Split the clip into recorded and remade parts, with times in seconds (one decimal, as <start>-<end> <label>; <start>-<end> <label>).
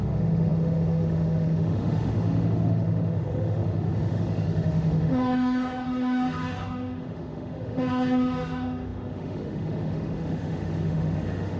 0.0-11.6 remade